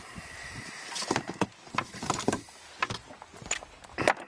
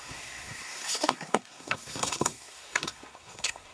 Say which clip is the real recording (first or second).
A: first